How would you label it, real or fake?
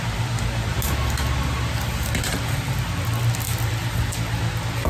real